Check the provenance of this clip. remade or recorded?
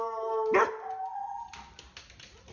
recorded